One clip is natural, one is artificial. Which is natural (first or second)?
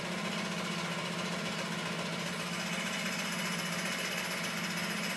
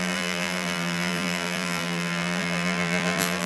first